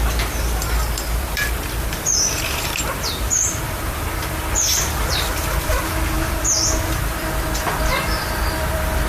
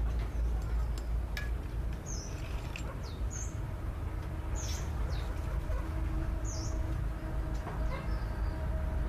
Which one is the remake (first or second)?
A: first